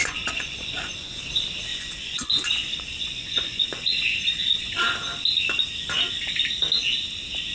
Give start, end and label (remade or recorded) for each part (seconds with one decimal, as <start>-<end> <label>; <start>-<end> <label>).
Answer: 0.0-1.2 remade; 1.2-1.7 recorded; 1.7-4.8 remade; 4.8-7.5 recorded